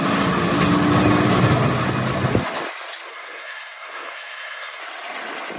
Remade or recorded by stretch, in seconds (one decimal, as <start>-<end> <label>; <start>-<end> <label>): 0.0-3.1 recorded; 3.1-4.8 remade; 4.8-5.6 recorded